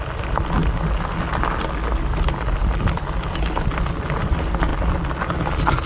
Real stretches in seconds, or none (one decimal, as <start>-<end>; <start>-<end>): 0.0-5.9